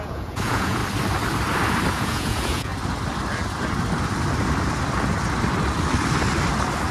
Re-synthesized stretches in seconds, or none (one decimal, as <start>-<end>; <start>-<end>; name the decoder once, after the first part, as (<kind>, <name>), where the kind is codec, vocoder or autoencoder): 0.0-0.8 (vocoder, Vocos); 1.9-2.7